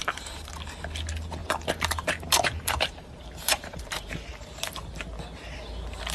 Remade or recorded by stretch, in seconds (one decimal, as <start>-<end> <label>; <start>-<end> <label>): 0.0-0.5 remade; 0.5-1.4 recorded; 1.4-4.6 remade; 4.6-6.1 recorded